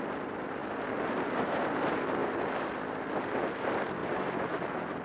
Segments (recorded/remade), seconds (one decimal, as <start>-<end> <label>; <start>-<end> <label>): 0.0-5.0 recorded